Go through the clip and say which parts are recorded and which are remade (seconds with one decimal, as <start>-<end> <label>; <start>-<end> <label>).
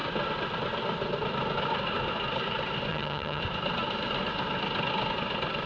0.0-2.9 recorded; 2.9-3.4 remade; 3.4-5.7 recorded